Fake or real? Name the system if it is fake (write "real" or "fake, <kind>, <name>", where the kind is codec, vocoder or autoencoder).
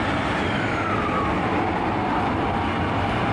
real